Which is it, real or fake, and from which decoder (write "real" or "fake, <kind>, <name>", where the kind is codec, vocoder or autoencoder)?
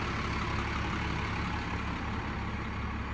real